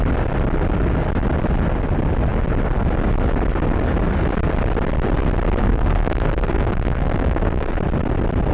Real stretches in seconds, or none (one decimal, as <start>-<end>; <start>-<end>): 0.0-5.6; 7.7-8.5

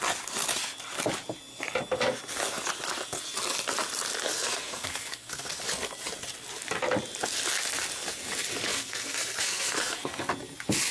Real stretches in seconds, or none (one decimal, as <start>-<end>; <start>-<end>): 0.0-4.3; 5.6-8.7; 10.3-10.9